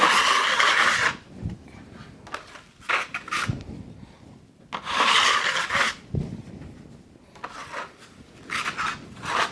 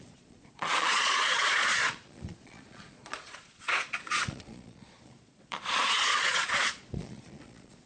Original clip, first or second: first